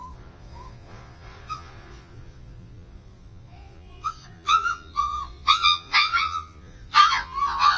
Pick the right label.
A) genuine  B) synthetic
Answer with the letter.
B